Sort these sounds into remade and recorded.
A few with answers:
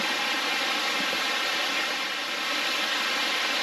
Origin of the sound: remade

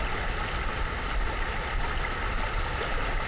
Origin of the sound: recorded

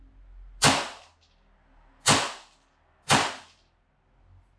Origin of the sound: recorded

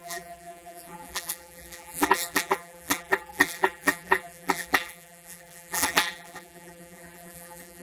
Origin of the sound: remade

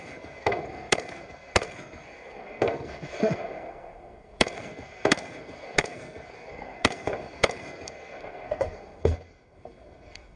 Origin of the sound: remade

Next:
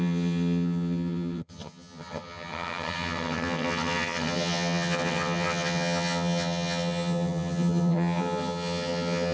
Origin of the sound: remade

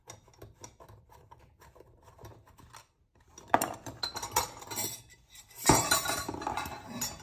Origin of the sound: recorded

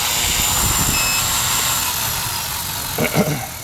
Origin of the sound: recorded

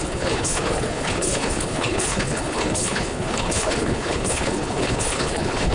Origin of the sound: remade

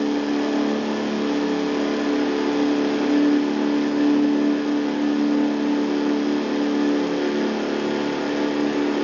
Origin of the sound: recorded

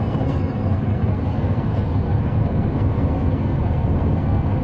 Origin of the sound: remade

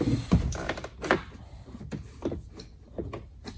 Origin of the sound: recorded